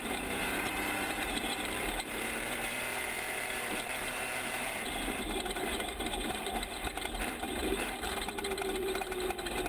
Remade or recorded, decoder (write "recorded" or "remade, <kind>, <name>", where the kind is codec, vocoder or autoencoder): remade, vocoder, BigVGAN v2